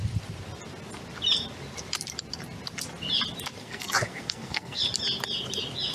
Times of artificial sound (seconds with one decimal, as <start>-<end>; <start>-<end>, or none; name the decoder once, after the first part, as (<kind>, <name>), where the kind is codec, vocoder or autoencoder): 3.6-4.8 (codec, SNAC)